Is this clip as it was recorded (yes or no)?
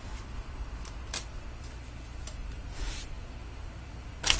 no